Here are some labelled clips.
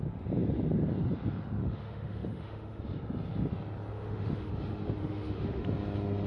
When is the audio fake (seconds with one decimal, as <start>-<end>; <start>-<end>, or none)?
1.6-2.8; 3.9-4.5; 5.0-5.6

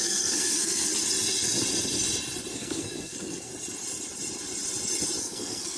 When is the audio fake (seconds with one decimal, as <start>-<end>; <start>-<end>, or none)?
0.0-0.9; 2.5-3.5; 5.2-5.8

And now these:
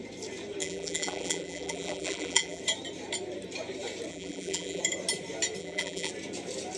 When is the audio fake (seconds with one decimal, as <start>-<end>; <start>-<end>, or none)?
0.6-2.6; 4.1-4.8; 5.6-6.1

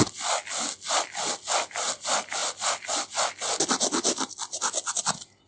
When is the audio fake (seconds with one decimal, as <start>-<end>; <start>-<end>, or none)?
none

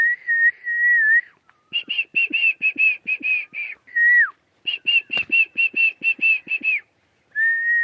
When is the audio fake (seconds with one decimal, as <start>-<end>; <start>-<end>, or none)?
none